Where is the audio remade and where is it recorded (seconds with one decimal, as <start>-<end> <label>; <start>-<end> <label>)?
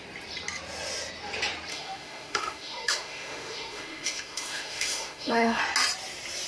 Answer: 0.0-1.7 recorded; 1.7-5.6 remade; 5.6-6.5 recorded